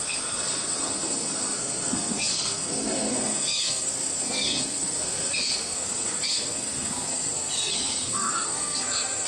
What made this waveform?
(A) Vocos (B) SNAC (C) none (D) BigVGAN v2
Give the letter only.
B